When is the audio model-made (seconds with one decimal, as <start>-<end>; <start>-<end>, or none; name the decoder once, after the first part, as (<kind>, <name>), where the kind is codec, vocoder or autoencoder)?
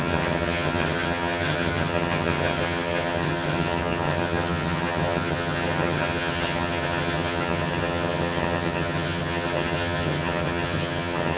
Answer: 0.0-11.4 (vocoder, HiFi-GAN)